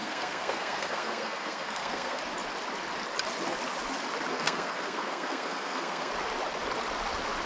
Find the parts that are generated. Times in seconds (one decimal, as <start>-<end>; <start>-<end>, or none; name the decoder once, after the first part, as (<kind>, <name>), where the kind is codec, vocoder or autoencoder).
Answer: 0.0-2.2 (codec, SNAC); 4.3-6.1